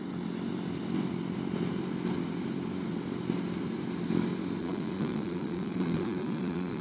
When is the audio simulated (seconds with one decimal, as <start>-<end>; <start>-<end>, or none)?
4.6-6.8